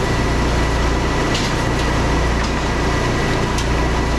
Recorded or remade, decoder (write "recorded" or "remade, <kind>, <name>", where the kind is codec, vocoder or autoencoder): recorded